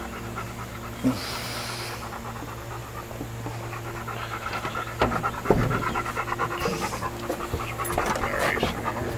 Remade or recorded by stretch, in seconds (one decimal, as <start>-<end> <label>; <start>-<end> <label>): 0.0-9.2 recorded